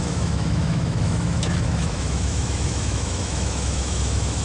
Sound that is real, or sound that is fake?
fake